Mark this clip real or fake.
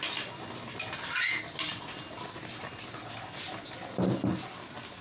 real